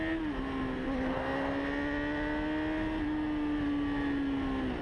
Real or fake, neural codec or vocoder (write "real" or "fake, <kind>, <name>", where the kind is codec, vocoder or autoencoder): real